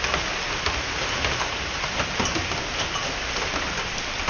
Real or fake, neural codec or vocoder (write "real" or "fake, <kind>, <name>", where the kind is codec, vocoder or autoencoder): real